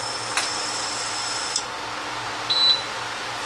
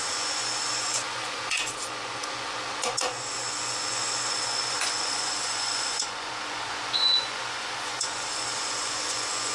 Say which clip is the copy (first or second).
second